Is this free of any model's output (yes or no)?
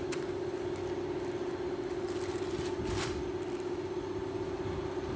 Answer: yes